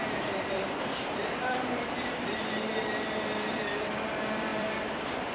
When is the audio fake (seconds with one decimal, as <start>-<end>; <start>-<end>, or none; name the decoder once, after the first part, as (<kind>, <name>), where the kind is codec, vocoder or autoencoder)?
0.0-5.3 (vocoder, BigVGAN v2)